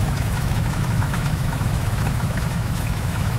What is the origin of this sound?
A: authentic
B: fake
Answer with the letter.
B